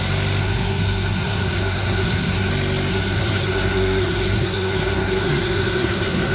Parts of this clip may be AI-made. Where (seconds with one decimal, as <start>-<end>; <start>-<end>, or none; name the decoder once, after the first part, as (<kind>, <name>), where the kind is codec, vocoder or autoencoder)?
0.4-2.5 (codec, SNAC); 2.9-6.3